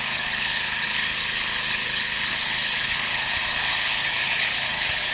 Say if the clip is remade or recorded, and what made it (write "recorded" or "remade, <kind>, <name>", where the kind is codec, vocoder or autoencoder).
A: remade, codec, HILCodec